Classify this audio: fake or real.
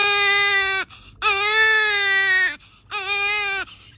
real